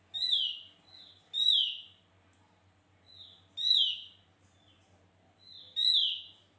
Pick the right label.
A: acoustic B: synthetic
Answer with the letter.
A